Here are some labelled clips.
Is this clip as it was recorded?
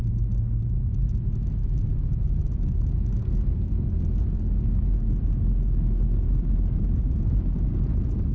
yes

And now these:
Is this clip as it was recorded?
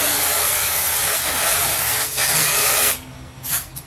no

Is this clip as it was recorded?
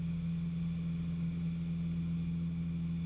yes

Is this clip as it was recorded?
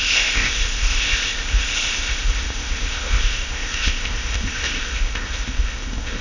no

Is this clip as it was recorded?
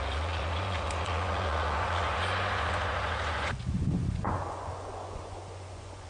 no